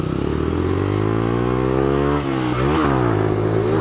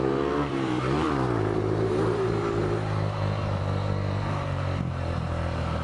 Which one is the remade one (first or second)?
second